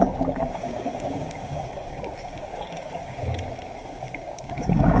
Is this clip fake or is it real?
fake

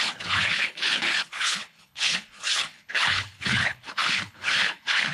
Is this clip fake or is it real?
fake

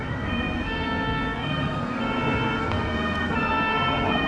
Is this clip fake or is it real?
fake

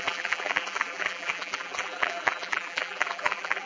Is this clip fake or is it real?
fake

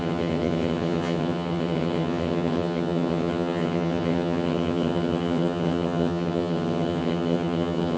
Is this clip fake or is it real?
fake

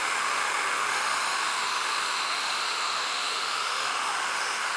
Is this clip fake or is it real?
fake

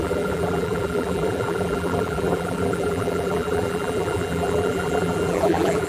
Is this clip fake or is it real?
fake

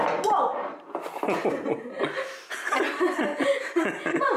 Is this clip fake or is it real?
real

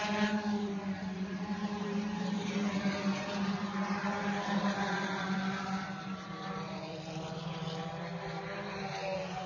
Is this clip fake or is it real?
fake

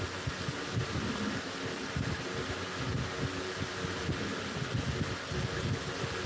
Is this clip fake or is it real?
real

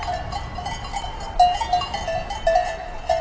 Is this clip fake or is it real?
real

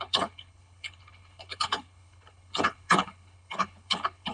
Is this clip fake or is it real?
fake